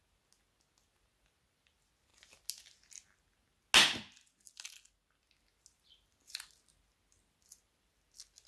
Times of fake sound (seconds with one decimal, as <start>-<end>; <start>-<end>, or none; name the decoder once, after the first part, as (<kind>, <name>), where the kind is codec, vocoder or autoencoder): none